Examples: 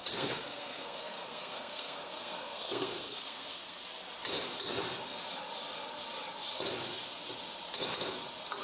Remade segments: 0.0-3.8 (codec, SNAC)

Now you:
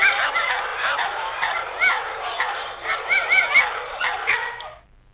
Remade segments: 0.7-3.5 (vocoder, BigVGAN v2)

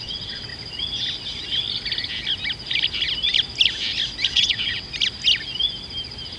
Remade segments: 0.0-0.5 (vocoder, WaveNeXt); 4.3-4.9

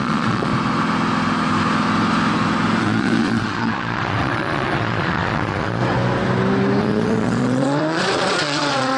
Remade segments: 0.0-0.5 (vocoder, Vocos); 2.8-5.8; 6.8-9.0

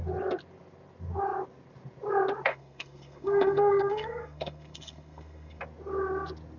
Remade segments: 2.5-5.6 (codec, SNAC)

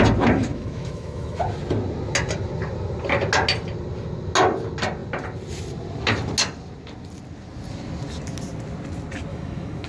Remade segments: 0.5-1.4 (autoencoder, DAC-VAE); 9.3-9.9

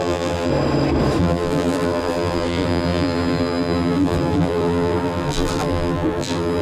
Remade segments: 0.0-0.5 (vocoder, BigVGAN v2); 1.2-6.6

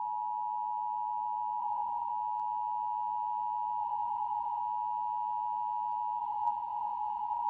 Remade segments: 1.6-2.1 (vocoder, WaveNeXt); 3.8-4.6; 6.2-7.5